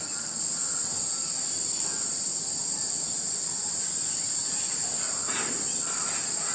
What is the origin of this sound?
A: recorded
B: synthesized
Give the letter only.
A